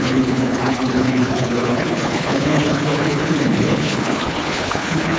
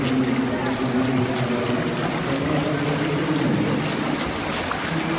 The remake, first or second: first